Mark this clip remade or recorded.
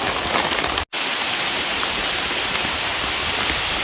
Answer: recorded